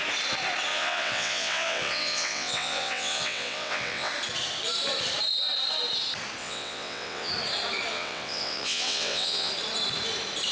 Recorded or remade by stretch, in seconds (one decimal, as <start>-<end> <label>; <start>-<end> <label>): 0.0-0.7 recorded; 0.7-4.1 remade; 4.1-6.4 recorded; 6.4-7.3 remade; 7.3-7.9 recorded; 7.9-9.5 remade; 9.5-10.5 recorded